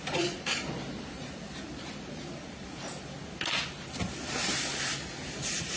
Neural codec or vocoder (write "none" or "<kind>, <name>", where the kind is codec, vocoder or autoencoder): none